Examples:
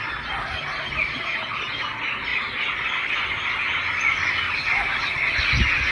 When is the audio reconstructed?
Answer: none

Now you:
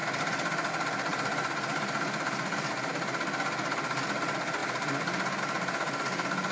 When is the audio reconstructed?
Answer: 0.0-0.7; 1.1-2.9; 4.6-5.4

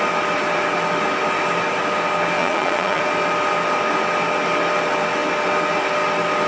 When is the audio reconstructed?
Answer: 2.4-3.0

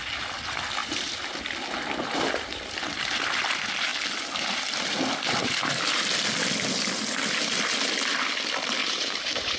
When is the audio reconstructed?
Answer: 0.8-1.4; 8.8-9.6

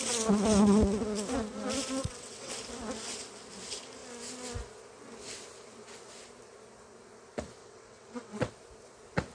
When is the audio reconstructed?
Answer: 2.0-2.5; 7.6-8.5